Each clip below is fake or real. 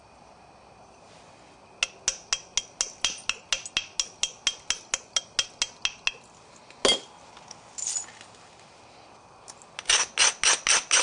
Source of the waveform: real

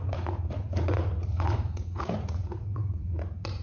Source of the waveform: fake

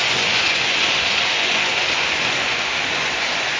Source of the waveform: fake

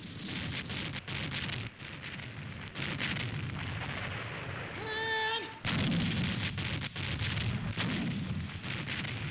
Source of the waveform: real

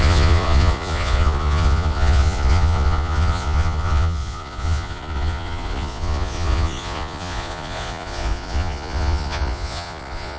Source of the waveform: fake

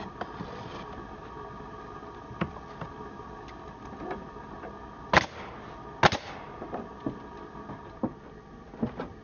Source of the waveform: real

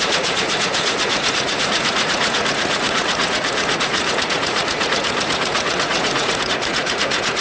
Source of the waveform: fake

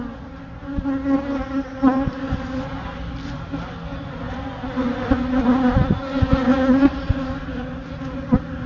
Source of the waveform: real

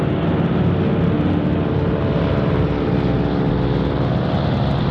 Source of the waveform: real